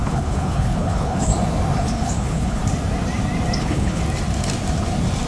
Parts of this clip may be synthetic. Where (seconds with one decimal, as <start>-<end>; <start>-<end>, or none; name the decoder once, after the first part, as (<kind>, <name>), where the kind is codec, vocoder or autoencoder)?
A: 0.0-1.3 (codec, HILCodec); 1.8-2.6; 3.6-4.0